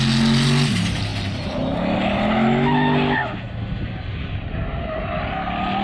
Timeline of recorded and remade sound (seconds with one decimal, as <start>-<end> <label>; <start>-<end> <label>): 0.0-5.8 recorded